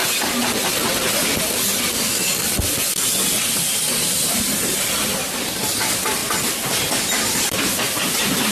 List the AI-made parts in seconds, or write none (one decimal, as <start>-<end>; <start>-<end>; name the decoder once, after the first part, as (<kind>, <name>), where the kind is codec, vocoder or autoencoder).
4.4-6.2 (vocoder, BigVGAN v2); 7.0-8.5